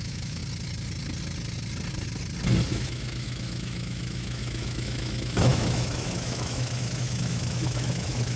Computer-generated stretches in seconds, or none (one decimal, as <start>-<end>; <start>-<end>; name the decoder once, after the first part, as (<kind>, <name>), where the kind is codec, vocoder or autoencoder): 0.0-0.4 (autoencoder, DAC-VAE); 2.7-8.4